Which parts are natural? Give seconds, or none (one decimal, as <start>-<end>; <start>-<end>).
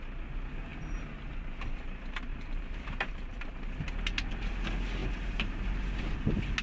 0.0-2.3; 3.4-5.0; 5.6-6.6